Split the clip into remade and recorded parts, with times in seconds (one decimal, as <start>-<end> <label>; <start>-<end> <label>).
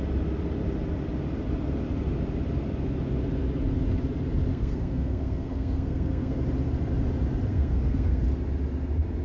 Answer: 0.0-4.5 recorded; 4.5-6.4 remade; 6.4-7.5 recorded; 7.5-8.2 remade; 8.2-9.2 recorded